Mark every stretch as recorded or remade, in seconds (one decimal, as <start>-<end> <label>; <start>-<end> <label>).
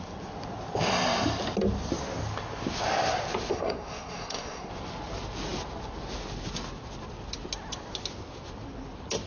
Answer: 0.0-3.5 recorded; 3.5-4.7 remade; 4.7-9.3 recorded